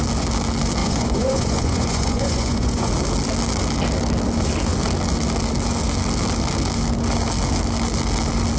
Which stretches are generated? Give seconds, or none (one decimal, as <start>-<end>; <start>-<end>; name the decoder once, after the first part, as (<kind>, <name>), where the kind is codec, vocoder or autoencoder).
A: 0.8-2.9 (vocoder, Vocos)